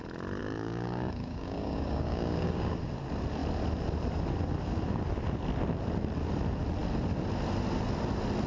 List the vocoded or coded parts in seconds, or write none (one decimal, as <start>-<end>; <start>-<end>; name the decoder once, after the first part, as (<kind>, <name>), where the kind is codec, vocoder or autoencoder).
0.4-2.7 (codec, DAC)